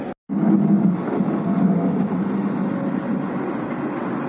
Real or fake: real